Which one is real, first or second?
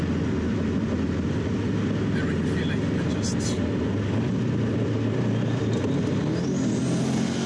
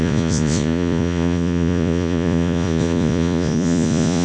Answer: first